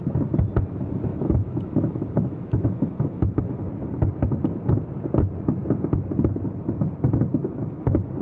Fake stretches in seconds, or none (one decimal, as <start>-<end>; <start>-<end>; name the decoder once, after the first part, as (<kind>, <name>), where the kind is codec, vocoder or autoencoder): 1.1-3.4 (autoencoder, DAC-VAE); 7.4-8.2